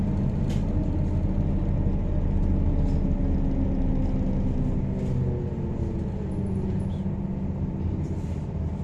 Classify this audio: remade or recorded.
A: recorded